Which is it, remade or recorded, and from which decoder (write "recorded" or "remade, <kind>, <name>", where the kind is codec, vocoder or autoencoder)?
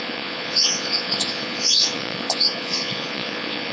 remade, vocoder, Vocos